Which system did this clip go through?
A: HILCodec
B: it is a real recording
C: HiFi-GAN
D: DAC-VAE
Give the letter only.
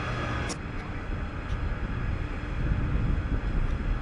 B